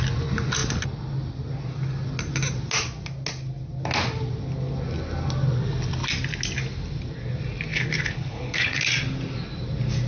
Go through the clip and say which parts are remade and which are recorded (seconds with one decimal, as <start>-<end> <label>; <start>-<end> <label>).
0.0-7.7 recorded; 7.7-8.8 remade; 8.8-10.1 recorded